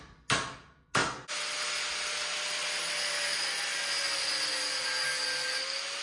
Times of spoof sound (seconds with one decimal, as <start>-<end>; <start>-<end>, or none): none